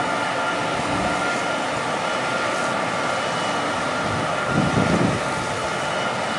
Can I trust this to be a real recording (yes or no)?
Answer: yes